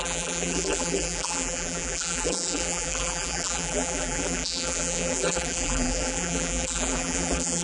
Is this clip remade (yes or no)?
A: yes